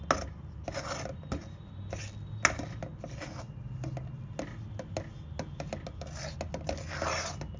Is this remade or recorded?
recorded